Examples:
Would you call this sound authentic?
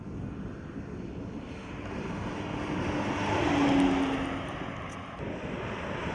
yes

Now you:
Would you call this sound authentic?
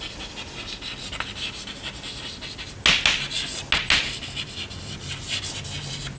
yes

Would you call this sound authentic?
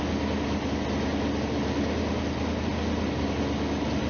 yes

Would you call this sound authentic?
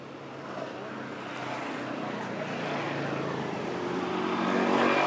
yes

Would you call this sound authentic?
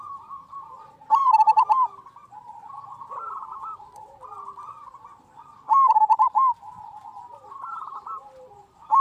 no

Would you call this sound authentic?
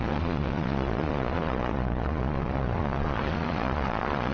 no